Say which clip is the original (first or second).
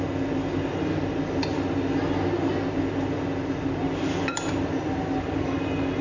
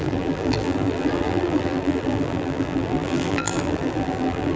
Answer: first